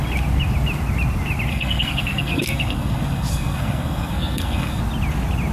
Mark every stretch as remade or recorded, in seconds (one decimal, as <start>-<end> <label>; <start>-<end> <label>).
0.0-1.5 recorded; 1.5-4.8 remade; 4.8-5.5 recorded